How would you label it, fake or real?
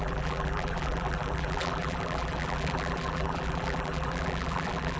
fake